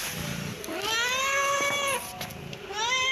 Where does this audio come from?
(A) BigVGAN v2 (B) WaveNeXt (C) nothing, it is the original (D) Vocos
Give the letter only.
C